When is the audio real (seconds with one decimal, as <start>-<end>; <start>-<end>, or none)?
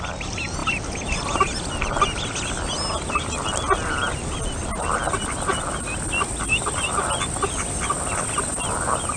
0.0-9.2